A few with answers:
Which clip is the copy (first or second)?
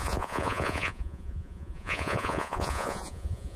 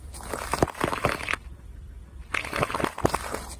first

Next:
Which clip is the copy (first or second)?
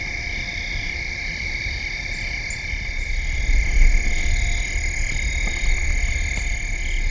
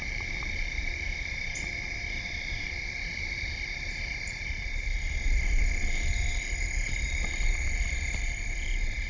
second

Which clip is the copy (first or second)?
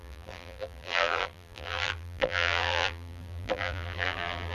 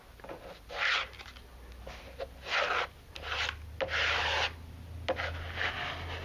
first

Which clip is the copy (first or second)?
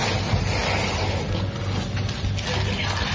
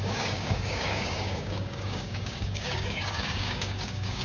second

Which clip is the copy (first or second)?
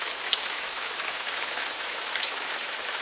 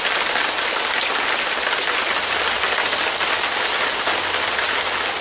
first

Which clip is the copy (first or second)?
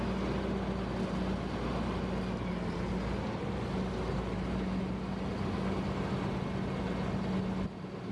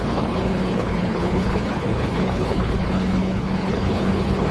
second